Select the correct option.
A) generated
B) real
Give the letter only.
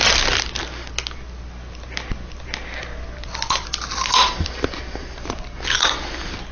B